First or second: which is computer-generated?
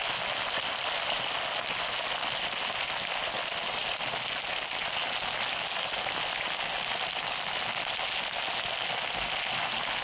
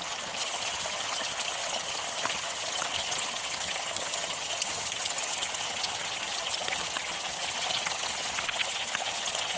second